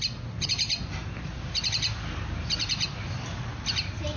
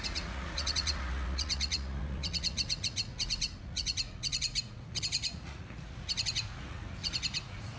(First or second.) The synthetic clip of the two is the second